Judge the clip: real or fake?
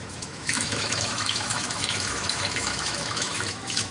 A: fake